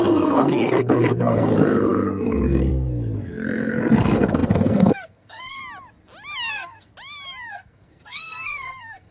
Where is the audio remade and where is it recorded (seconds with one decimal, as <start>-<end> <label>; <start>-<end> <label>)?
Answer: 0.0-5.6 remade; 5.6-6.5 recorded; 6.5-6.9 remade; 6.9-7.5 recorded; 7.5-9.1 remade